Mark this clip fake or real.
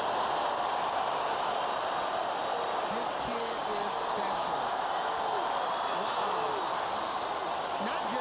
real